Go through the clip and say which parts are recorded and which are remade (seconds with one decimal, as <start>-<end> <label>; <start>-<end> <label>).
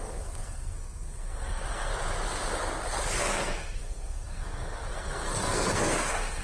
0.0-1.9 remade; 1.9-3.2 recorded; 3.2-6.4 remade